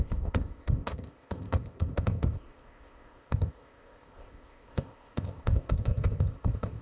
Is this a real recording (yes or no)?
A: no